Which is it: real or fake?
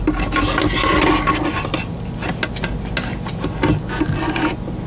real